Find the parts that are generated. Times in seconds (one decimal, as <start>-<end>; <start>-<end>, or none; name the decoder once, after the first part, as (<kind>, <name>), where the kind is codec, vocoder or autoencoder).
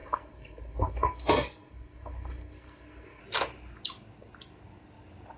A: 0.0-3.2 (codec, SNAC)